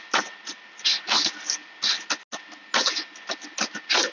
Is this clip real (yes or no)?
yes